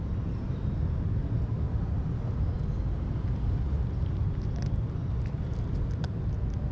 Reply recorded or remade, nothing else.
recorded